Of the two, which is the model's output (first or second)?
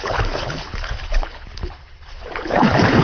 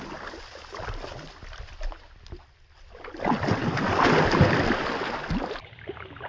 first